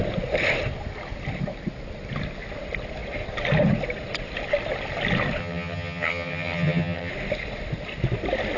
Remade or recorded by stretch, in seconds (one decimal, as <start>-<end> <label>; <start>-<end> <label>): 0.0-5.4 recorded; 5.4-7.1 remade; 7.1-8.6 recorded